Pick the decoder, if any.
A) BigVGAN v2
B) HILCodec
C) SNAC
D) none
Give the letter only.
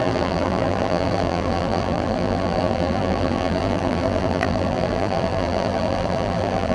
A